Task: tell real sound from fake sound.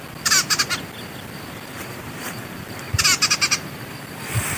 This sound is real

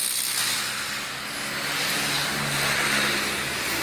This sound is real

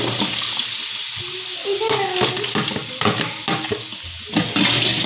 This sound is real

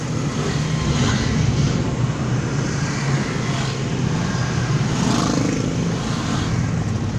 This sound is real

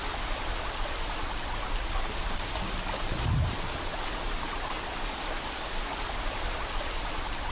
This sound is real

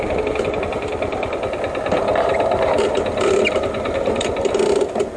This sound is real